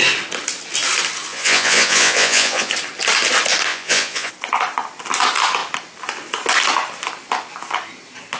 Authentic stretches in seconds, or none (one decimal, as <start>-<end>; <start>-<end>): 0.0-1.3; 2.7-3.7; 4.3-8.4